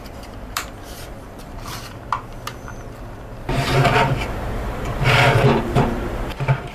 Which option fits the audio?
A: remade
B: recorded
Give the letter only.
A